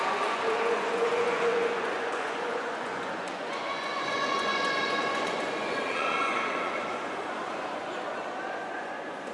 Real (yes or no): no